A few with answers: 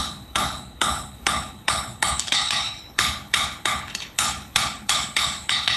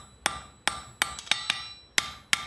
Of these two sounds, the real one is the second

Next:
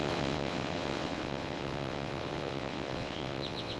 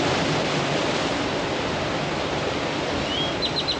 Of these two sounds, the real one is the second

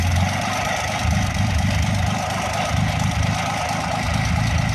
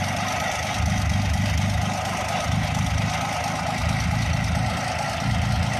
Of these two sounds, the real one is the second